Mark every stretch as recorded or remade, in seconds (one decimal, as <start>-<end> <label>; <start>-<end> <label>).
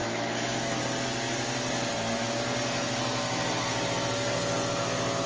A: 0.0-0.8 remade; 0.8-5.3 recorded